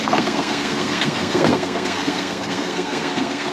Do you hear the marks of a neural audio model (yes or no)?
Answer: yes